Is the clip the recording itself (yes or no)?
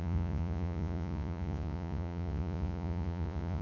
no